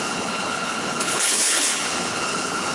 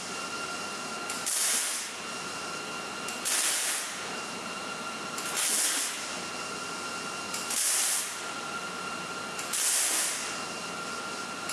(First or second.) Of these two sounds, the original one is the second